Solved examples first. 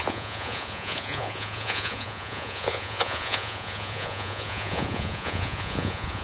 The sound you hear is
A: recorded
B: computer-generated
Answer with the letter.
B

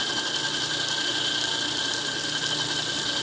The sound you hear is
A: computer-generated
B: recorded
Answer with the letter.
B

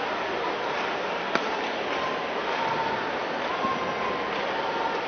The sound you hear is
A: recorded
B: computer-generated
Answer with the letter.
A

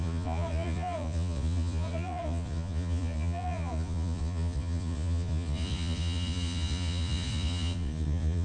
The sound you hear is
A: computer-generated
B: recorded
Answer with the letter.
A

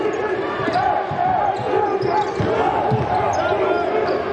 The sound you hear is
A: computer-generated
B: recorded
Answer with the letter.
B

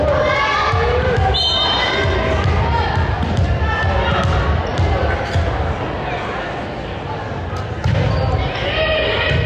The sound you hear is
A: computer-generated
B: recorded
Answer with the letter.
B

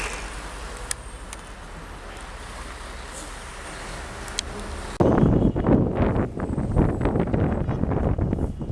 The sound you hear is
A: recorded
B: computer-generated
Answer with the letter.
A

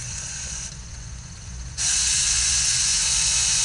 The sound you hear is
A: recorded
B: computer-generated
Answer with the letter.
B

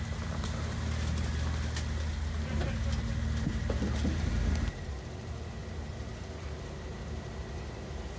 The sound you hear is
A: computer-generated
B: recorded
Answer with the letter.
B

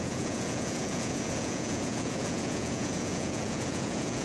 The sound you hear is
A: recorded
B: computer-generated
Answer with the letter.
B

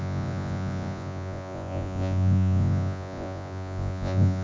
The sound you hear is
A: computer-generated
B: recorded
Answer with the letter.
A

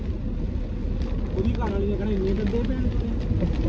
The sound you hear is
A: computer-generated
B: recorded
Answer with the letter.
B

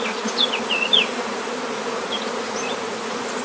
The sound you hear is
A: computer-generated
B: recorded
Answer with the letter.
A